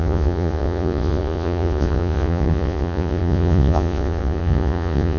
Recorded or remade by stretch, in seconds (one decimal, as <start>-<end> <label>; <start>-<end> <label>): 0.0-5.2 remade